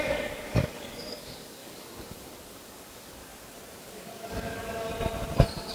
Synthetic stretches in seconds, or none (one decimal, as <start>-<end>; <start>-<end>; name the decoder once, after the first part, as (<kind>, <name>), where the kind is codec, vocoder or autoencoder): 0.0-3.3 (codec, DAC); 3.8-4.9